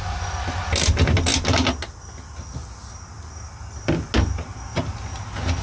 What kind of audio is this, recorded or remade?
recorded